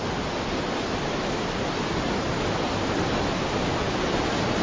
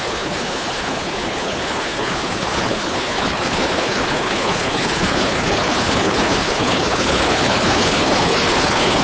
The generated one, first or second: second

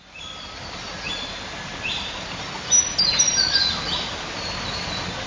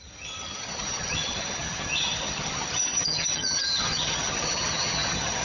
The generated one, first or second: second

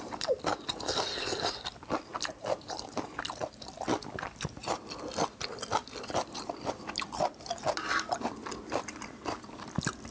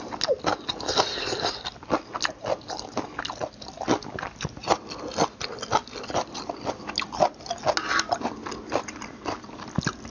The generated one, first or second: first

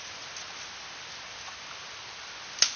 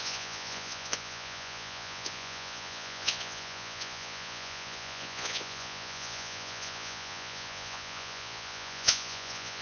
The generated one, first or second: second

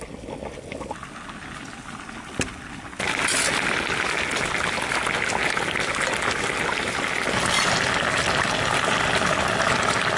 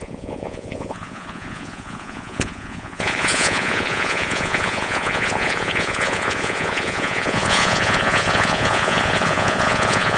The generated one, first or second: second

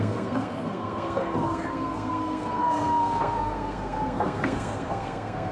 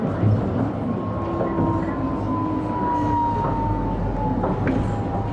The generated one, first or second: first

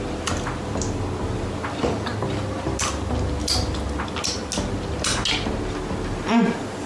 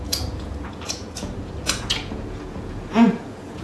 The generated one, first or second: second